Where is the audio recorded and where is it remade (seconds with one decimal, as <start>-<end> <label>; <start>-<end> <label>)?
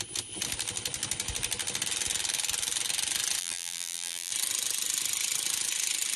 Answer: 0.0-3.4 recorded; 3.4-4.3 remade; 4.3-6.2 recorded